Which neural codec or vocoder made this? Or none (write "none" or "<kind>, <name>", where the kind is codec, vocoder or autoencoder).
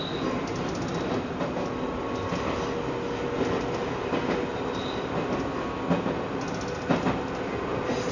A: none